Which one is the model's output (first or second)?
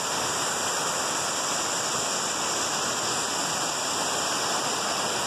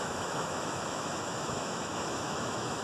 second